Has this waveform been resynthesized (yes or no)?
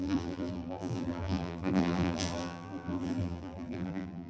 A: yes